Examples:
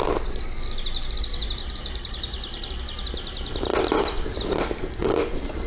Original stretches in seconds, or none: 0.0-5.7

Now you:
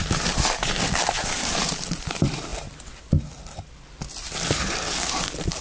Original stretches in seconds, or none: 2.5-5.1

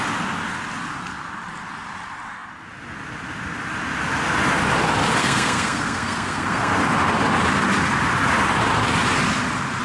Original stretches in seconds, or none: 0.0-5.2; 6.7-9.8

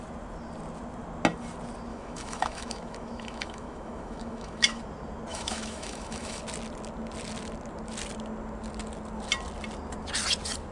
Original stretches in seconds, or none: 0.0-1.9; 4.8-5.3; 6.4-10.7